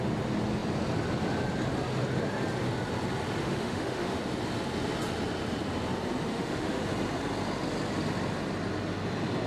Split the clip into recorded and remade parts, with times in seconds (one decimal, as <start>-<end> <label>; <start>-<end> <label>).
0.0-3.4 recorded; 3.4-4.2 remade; 4.2-6.3 recorded; 6.3-6.8 remade; 6.8-9.5 recorded